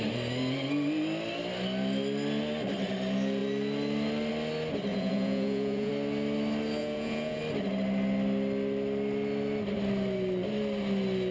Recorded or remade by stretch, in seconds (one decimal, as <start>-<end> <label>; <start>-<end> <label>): 0.0-4.9 recorded; 4.9-5.9 remade; 5.9-6.8 recorded; 6.8-7.4 remade; 7.4-11.3 recorded